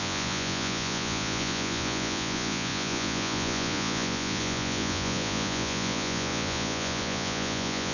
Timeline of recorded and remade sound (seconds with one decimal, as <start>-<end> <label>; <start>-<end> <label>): 0.0-7.9 remade